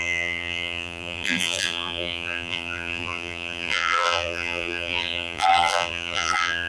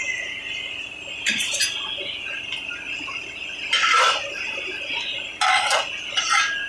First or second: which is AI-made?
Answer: first